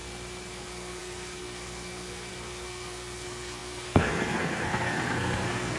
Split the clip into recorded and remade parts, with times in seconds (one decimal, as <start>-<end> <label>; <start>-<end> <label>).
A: 0.0-0.5 recorded; 0.5-5.8 remade